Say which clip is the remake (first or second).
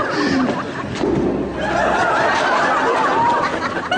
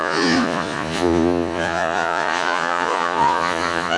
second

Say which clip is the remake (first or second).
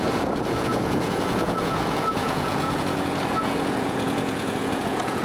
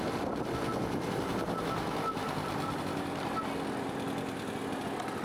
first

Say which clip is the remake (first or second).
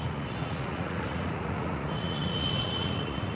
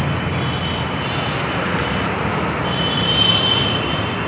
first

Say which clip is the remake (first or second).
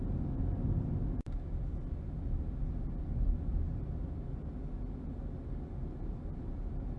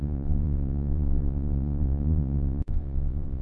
second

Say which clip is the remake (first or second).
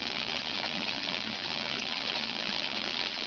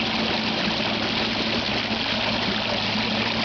first